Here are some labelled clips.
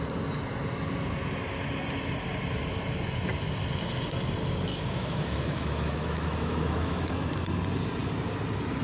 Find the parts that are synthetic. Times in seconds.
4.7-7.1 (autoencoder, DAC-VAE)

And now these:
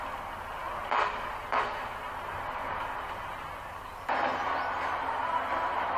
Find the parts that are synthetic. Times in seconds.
none

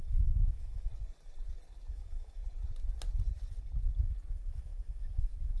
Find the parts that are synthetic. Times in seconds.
0.0-0.9 (autoencoder, DAC-VAE); 1.9-2.4; 4.3-5.6

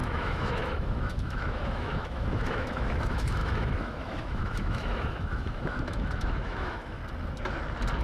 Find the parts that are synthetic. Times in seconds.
0.0-7.0 (autoencoder, DAC-VAE)

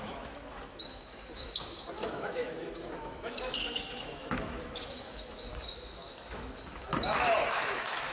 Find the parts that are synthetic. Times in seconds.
0.0-8.1 (autoencoder, DAC-VAE)

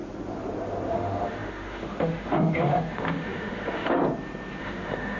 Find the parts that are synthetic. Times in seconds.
0.9-4.0 (autoencoder, DAC-VAE); 4.6-5.2

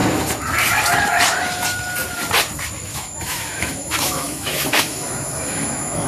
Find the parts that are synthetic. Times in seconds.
2.9-6.1 (autoencoder, DAC-VAE)